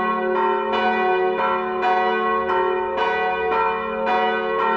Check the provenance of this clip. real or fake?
real